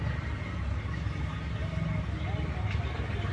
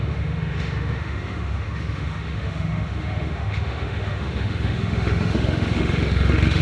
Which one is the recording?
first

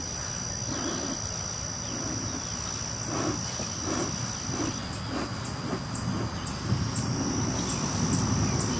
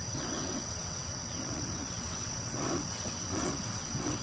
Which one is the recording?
first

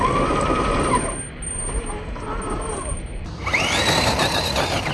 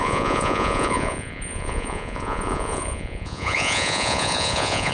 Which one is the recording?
first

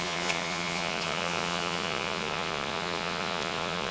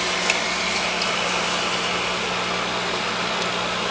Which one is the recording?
second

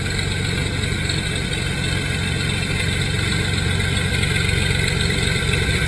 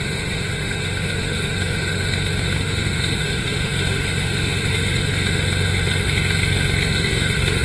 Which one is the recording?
first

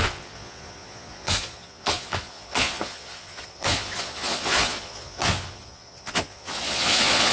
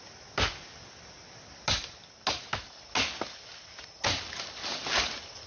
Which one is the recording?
second